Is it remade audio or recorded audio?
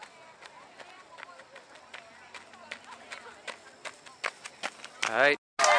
recorded